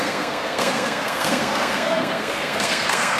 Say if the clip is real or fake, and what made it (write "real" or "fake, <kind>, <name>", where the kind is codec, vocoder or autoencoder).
fake, codec, SNAC